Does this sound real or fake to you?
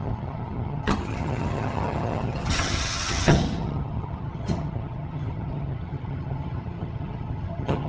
fake